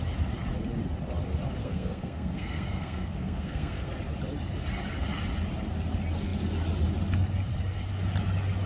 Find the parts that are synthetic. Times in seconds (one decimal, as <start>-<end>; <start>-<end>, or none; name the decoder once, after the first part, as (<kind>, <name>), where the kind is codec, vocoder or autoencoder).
1.6-3.9 (codec, SNAC)